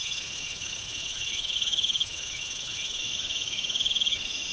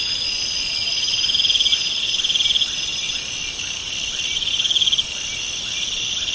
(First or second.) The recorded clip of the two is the second